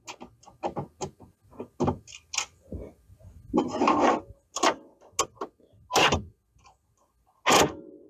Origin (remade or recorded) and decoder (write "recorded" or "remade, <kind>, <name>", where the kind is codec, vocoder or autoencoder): recorded